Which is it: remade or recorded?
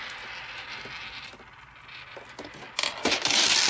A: recorded